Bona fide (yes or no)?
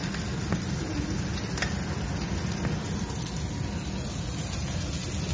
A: yes